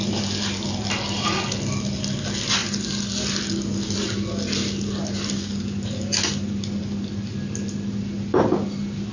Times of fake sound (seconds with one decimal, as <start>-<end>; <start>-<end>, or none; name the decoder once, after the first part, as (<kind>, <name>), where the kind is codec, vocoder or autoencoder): none